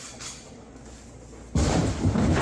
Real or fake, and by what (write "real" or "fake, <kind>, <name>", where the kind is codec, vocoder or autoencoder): real